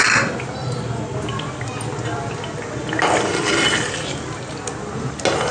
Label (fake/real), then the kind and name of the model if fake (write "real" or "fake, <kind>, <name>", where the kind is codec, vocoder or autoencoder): real